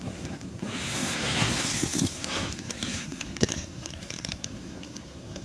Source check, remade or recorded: remade